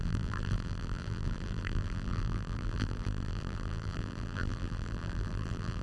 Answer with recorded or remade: remade